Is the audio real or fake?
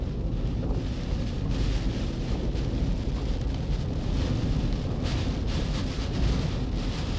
real